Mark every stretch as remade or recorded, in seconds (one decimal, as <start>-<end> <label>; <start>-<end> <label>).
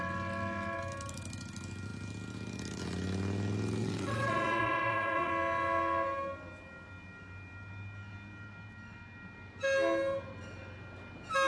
0.0-3.8 recorded; 3.8-5.3 remade; 5.3-11.5 recorded